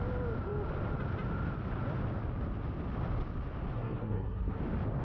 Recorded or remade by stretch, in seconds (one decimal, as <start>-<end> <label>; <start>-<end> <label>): 0.0-3.7 recorded; 3.7-4.6 remade; 4.6-5.0 recorded